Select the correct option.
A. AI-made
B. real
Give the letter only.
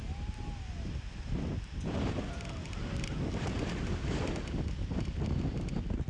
B